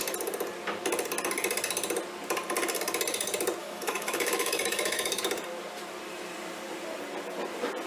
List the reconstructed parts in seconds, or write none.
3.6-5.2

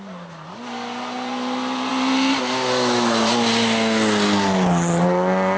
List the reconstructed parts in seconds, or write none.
none